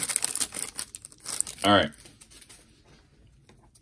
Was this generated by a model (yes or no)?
no